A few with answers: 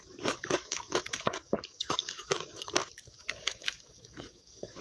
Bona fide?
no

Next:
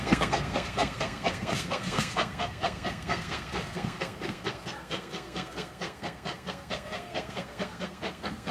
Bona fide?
no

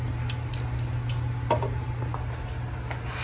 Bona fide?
yes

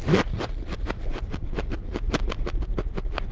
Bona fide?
yes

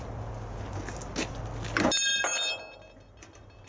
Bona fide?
yes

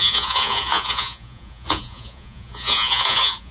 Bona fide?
no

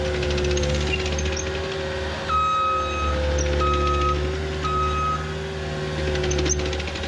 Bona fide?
yes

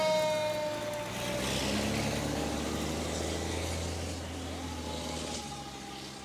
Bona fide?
yes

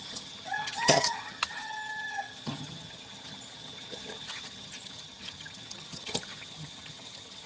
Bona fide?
no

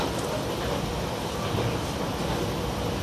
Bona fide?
yes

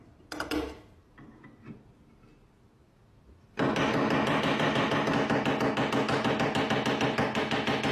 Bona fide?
yes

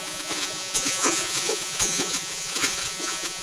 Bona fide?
no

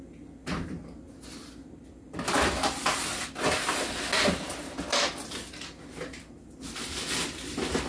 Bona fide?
yes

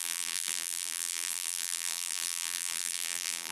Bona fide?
no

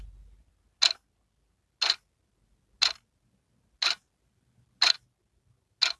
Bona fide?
yes